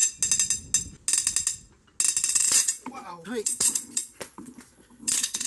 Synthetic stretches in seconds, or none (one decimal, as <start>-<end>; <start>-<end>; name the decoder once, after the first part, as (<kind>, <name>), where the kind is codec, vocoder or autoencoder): 2.3-5.5 (vocoder, Vocos)